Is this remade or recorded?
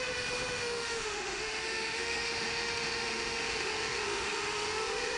remade